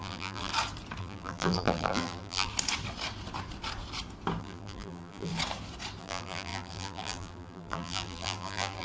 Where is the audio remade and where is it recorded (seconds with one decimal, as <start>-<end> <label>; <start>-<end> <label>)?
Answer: 0.0-0.5 remade; 0.5-1.0 recorded; 1.0-2.5 remade; 2.5-4.4 recorded; 4.4-5.3 remade; 5.3-6.0 recorded; 6.0-8.8 remade